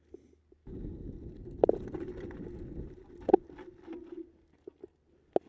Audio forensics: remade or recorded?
recorded